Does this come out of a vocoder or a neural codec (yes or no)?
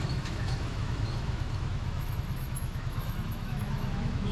yes